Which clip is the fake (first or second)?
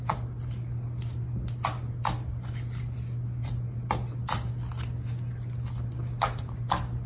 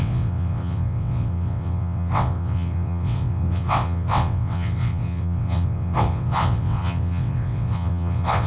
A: second